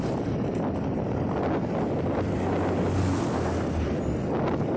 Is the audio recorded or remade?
recorded